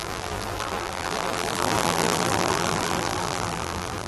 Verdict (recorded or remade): remade